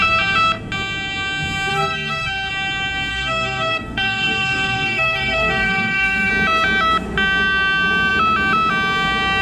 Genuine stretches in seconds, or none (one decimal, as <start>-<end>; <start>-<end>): 0.0-1.7; 2.5-3.1; 6.3-9.4